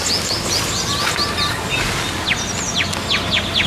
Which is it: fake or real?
real